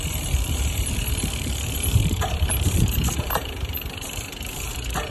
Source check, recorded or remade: remade